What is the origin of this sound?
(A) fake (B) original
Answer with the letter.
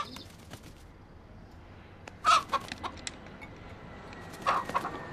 B